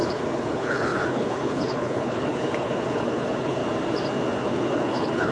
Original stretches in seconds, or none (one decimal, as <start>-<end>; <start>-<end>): 3.6-4.4